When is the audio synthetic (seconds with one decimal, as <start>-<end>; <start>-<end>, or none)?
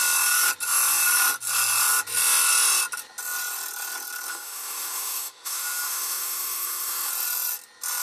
4.3-7.1